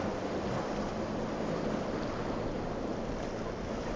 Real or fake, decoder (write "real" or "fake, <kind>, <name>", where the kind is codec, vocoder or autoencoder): real